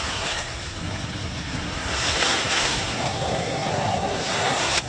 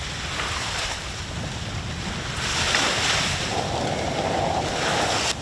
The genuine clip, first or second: second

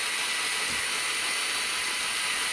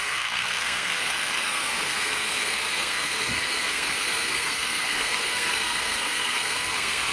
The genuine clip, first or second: first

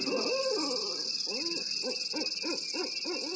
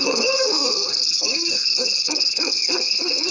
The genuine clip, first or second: first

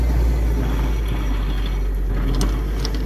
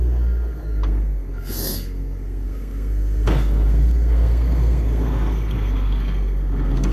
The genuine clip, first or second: first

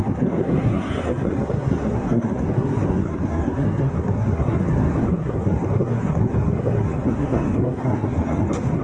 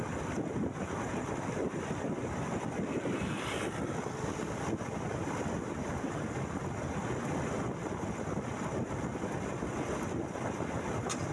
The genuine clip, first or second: second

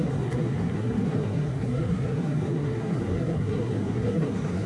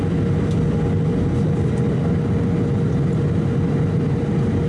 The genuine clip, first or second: second